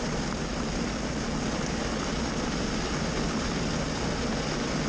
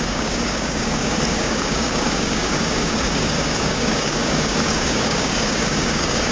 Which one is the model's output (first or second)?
second